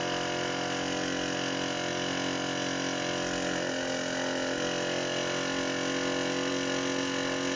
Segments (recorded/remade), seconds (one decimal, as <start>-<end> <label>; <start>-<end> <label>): 0.0-7.6 recorded